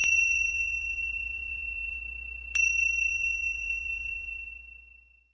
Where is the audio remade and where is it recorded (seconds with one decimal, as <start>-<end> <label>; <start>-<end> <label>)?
0.0-2.0 remade; 2.0-3.1 recorded; 3.1-4.5 remade; 4.5-5.3 recorded